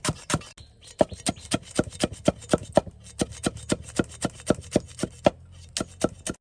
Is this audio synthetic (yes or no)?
no